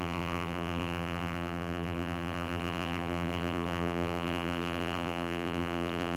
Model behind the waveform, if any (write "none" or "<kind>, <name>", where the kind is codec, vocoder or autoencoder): vocoder, BigVGAN v2